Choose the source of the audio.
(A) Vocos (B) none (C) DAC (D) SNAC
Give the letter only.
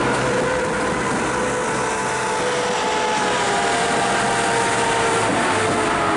B